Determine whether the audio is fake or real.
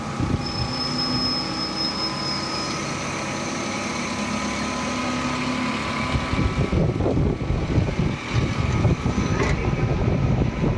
real